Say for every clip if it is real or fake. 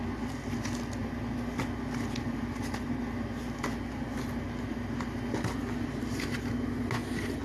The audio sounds real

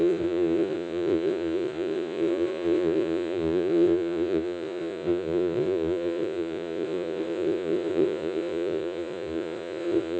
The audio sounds fake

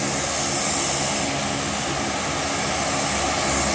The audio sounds real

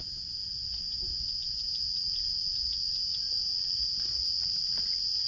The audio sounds real